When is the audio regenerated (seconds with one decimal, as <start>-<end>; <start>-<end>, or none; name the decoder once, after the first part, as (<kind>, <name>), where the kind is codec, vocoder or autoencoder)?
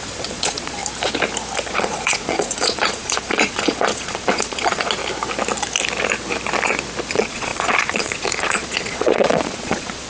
0.0-0.8 (vocoder, Vocos); 1.7-5.0; 7.1-10.1